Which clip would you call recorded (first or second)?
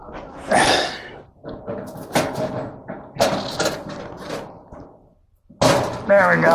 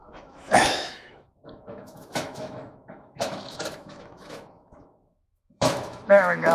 first